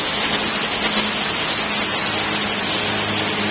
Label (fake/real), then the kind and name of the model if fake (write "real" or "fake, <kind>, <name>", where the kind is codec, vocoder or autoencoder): real